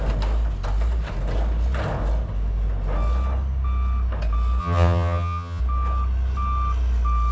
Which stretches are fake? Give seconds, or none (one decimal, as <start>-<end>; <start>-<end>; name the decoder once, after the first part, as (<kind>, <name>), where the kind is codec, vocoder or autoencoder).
4.6-5.6 (vocoder, HiFi-GAN)